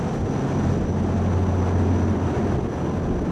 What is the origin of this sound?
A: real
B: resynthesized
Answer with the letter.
A